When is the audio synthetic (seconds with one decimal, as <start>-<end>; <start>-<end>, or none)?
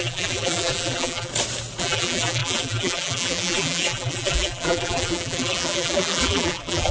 0.0-1.3; 1.8-6.9